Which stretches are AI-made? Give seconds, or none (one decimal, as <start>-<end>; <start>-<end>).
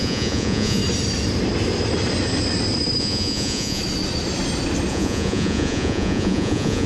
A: 0.0-0.8; 3.0-3.8; 4.9-6.9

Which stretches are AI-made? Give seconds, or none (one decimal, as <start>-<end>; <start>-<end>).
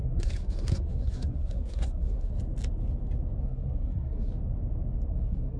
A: 0.0-2.3; 3.4-4.3; 5.1-5.6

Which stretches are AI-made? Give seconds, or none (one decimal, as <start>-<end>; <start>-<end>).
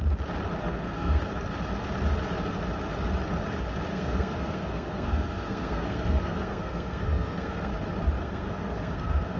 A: 0.6-1.2; 3.9-7.7; 8.2-9.4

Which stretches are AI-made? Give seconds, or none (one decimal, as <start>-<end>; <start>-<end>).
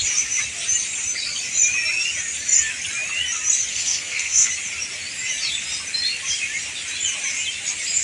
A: 3.7-4.5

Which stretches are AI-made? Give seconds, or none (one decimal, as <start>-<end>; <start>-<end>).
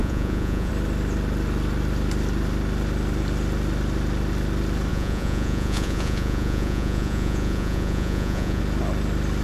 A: 0.0-0.7; 4.9-8.6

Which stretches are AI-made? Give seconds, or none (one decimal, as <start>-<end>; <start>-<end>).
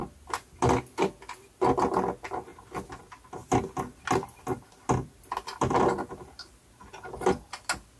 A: none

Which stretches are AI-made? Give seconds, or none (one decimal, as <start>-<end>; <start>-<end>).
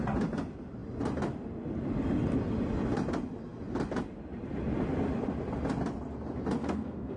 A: 6.6-7.2